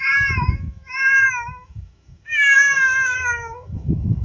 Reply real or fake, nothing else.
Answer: fake